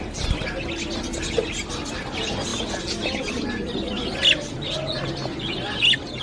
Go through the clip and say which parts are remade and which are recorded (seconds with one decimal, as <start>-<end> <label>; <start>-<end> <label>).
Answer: 0.0-6.2 recorded